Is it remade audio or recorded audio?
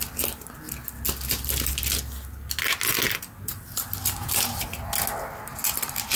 recorded